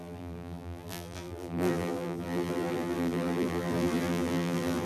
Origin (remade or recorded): remade